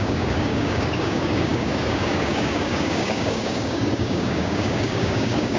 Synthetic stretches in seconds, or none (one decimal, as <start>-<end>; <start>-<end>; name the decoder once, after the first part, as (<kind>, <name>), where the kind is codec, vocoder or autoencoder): 0.0-5.6 (codec, DAC)